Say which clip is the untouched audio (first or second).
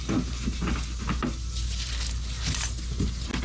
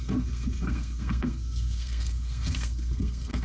first